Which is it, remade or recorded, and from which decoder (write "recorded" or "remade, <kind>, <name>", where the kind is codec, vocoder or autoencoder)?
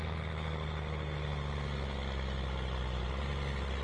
recorded